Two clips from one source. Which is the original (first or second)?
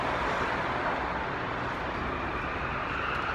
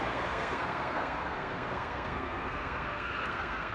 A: first